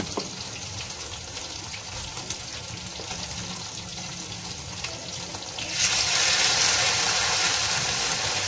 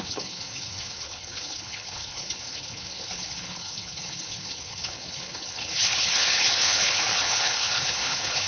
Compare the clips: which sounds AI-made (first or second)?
second